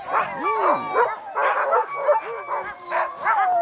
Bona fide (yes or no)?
yes